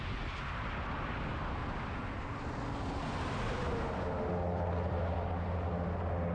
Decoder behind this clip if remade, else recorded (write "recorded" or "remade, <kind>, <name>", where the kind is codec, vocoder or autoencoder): recorded